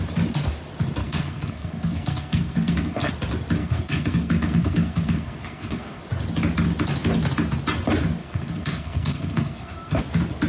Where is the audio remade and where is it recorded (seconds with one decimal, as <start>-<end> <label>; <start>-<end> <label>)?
0.0-1.0 recorded; 1.0-3.1 remade; 3.1-3.6 recorded; 3.6-6.0 remade; 6.0-8.2 recorded; 8.2-10.0 remade; 10.0-10.5 recorded